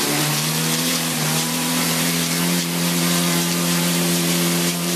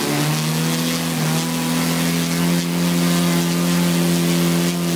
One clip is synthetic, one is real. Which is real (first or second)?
second